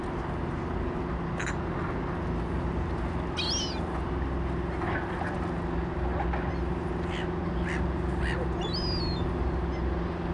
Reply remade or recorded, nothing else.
recorded